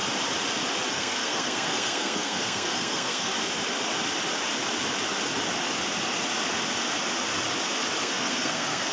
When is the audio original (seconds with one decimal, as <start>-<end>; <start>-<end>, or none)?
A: 0.0-0.9; 3.3-8.0